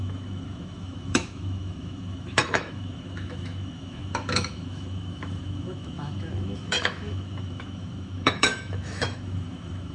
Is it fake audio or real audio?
fake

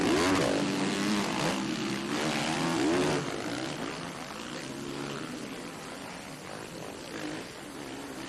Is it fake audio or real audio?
real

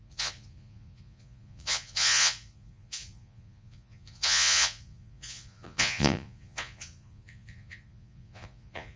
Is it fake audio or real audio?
fake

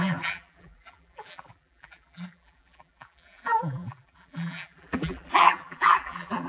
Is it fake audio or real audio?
fake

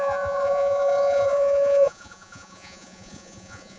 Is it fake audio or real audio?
fake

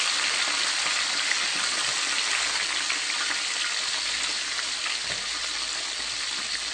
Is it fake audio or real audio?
real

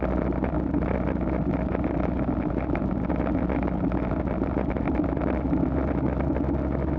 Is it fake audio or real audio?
real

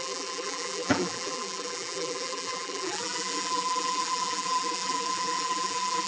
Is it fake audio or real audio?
fake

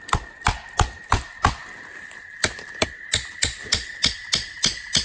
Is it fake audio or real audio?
real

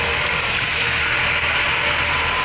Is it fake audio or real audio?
real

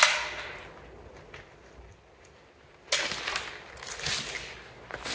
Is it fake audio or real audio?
real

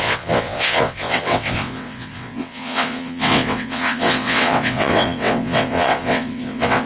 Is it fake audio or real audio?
fake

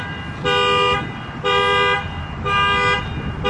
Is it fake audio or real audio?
real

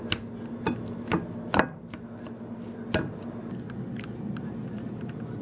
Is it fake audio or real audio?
real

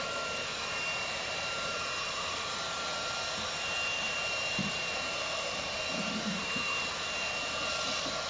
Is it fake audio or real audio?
fake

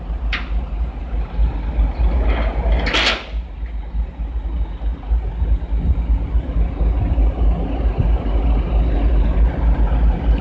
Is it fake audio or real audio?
real